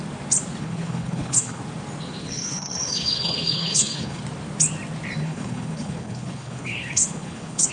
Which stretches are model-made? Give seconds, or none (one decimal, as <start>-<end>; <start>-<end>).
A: 0.6-1.6; 2.2-4.2; 5.2-7.7